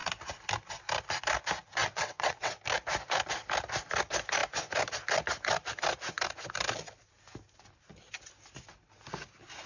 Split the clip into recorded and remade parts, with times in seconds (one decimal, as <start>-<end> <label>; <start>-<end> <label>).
0.0-1.8 recorded; 1.8-2.5 remade; 2.5-9.7 recorded